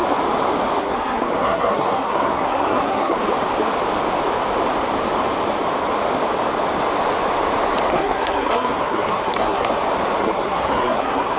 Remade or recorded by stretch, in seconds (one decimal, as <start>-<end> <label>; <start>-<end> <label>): 0.0-0.8 recorded; 0.8-3.2 remade; 3.2-7.9 recorded; 7.9-9.7 remade; 9.7-10.2 recorded; 10.2-11.4 remade